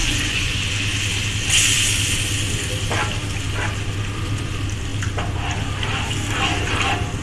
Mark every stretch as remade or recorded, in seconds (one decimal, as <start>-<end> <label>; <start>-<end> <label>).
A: 0.0-0.6 remade; 0.6-7.2 recorded